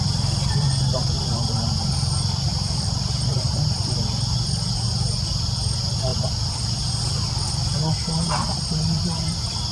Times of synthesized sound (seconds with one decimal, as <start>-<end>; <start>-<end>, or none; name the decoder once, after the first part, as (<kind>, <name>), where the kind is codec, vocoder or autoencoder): 2.5-3.9 (vocoder, BigVGAN v2)